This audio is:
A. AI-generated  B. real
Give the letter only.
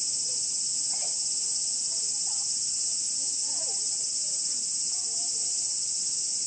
B